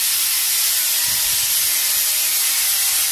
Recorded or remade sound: recorded